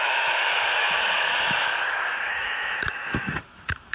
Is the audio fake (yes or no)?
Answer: yes